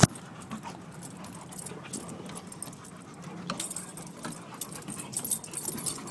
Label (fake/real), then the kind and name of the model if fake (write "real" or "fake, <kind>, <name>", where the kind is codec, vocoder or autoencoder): real